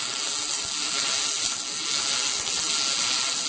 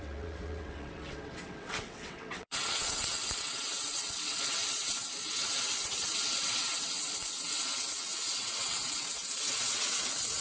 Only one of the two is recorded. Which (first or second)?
first